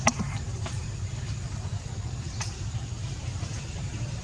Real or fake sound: fake